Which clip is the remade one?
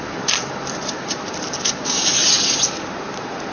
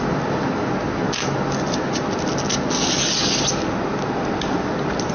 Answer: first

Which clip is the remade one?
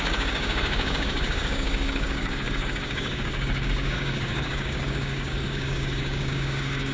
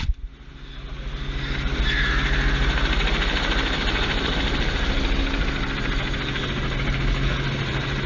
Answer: first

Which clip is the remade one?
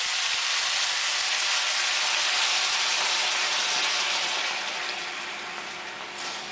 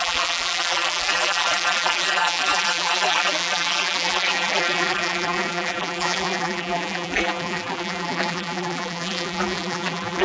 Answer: second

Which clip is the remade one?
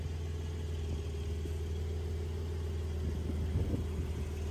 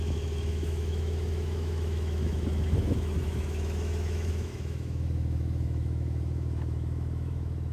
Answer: second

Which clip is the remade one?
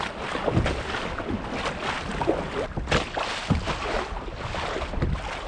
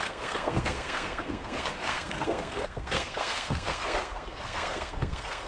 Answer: second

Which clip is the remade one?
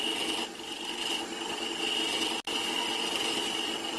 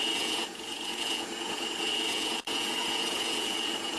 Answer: second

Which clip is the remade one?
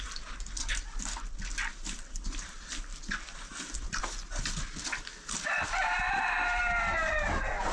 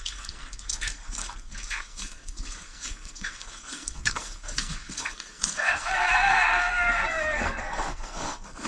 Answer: second